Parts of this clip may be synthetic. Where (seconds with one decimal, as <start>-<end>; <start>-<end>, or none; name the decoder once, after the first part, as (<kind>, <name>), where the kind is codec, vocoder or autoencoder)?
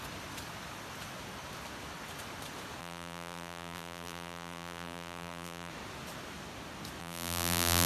2.8-5.7 (vocoder, BigVGAN v2); 7.0-7.9